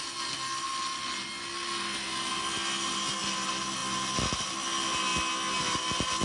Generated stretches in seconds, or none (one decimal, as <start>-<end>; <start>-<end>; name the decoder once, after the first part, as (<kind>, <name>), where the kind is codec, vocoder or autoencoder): none